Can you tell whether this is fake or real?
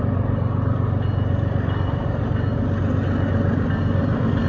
real